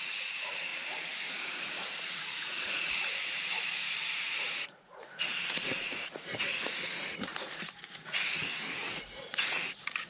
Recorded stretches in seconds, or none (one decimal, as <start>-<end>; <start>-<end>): 0.7-1.3; 8.4-8.9